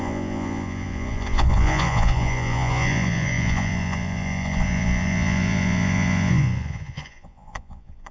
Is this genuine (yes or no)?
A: no